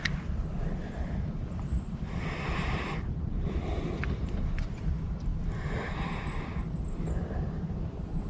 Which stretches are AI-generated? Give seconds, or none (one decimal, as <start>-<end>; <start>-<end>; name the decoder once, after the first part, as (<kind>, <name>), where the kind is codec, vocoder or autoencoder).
0.0-8.3 (vocoder, BigVGAN v2)